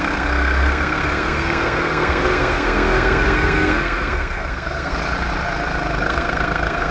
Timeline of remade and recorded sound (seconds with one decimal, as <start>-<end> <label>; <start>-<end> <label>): 0.0-5.0 remade; 5.0-6.0 recorded; 6.0-6.9 remade